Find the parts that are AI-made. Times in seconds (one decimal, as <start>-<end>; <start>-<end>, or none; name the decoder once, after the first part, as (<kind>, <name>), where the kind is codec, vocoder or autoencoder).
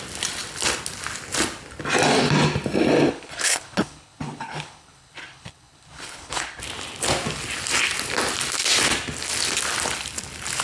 3.1-6.6 (codec, HILCodec)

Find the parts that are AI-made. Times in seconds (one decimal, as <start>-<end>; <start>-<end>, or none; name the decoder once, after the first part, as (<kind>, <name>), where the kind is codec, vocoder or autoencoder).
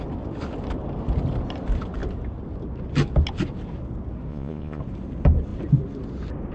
4.3-4.8 (vocoder, Vocos)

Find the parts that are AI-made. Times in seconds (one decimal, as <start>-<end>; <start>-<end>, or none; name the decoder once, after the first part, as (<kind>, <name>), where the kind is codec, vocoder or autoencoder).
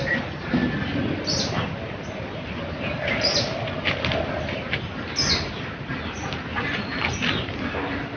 none